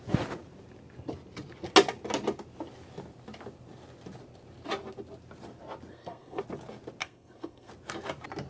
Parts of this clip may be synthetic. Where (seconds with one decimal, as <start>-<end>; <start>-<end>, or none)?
5.9-6.4; 7.0-7.7